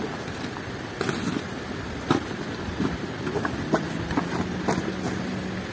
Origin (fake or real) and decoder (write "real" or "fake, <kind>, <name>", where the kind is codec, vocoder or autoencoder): real